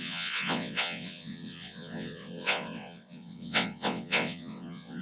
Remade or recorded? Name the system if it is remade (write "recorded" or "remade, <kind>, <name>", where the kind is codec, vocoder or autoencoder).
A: remade, vocoder, WaveNeXt